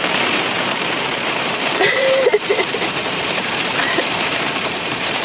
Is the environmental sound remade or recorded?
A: remade